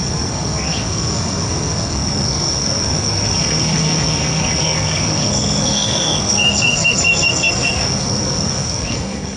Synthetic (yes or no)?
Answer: yes